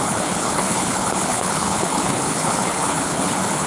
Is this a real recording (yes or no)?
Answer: no